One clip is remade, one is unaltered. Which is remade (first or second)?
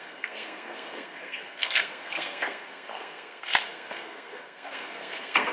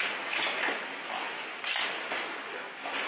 first